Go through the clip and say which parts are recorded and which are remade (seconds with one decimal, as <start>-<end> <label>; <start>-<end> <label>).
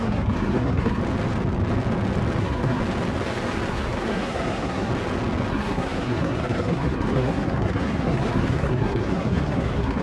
0.0-1.0 remade; 1.0-2.4 recorded; 2.4-2.8 remade; 2.8-3.7 recorded; 3.7-4.9 remade; 4.9-5.5 recorded; 5.5-10.0 remade